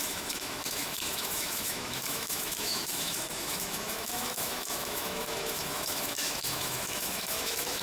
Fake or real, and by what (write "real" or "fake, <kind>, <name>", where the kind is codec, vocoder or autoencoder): fake, autoencoder, DAC-VAE